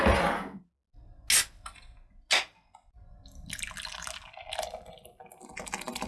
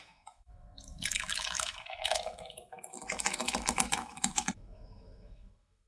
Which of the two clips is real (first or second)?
first